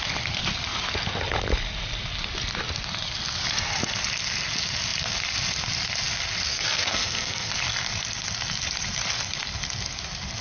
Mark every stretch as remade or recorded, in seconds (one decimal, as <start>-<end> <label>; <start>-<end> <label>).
0.0-6.5 recorded; 6.5-7.5 remade; 7.5-10.4 recorded